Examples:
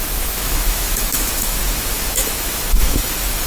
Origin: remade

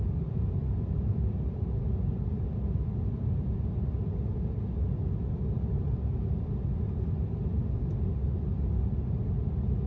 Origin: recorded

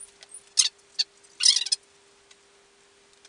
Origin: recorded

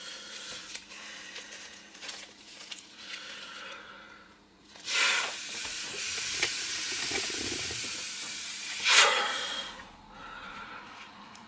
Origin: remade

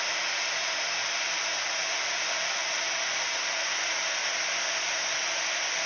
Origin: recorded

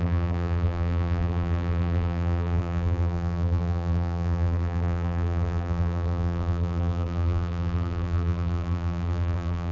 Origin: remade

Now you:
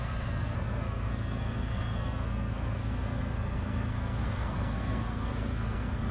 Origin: remade